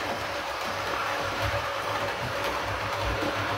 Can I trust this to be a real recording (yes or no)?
no